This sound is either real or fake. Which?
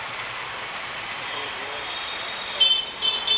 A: fake